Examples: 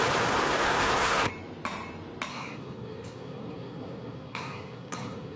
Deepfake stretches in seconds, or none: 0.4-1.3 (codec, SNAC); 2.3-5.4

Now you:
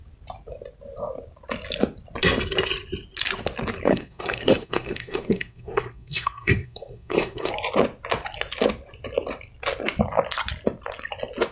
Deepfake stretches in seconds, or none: 3.9-7.5 (codec, SNAC)

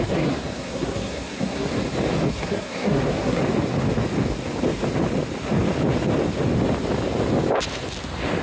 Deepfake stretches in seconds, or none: 0.0-1.7 (codec, SNAC); 2.3-3.4

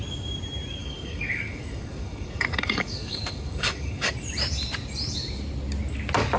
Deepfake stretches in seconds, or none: 0.8-4.1 (codec, DAC)

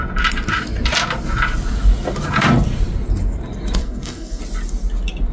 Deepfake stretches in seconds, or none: 3.8-4.4 (codec, SNAC)

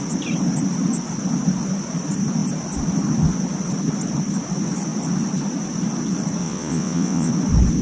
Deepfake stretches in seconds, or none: 6.4-7.3 (vocoder, WaveNeXt)